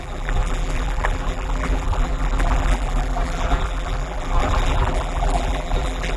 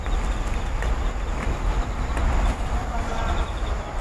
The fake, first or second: first